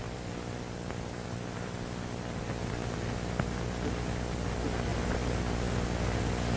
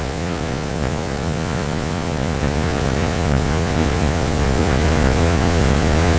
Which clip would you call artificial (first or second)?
second